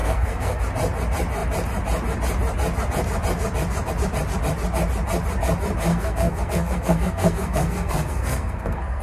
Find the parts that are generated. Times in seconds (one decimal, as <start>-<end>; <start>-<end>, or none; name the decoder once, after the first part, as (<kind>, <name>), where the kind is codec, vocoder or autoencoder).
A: 0.0-0.6 (codec, SNAC); 5.9-9.0